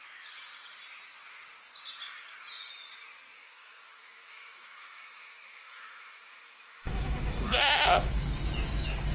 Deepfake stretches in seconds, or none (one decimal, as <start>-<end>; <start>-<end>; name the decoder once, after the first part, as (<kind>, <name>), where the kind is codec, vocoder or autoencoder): 3.4-8.2 (autoencoder, DAC-VAE)